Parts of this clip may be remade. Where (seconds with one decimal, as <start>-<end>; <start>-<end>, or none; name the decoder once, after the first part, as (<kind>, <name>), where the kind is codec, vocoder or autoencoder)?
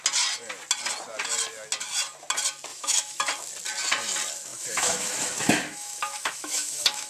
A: 2.7-3.2 (autoencoder, DAC-VAE); 4.5-7.1